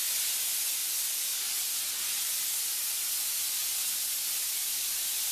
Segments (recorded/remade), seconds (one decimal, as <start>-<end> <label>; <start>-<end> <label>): 0.0-5.3 recorded